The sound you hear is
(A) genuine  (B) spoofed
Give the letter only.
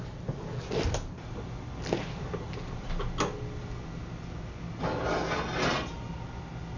A